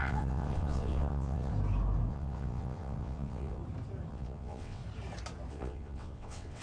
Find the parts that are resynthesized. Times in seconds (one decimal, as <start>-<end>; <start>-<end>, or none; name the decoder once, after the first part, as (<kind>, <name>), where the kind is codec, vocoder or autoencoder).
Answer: 0.0-1.5 (vocoder, WaveNeXt); 2.1-3.6; 4.1-4.8; 5.5-6.6